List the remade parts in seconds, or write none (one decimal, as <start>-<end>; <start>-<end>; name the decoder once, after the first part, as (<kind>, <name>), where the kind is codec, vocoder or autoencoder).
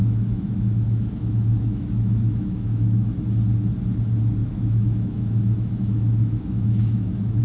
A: 0.0-3.2 (autoencoder, DAC-VAE); 4.4-7.4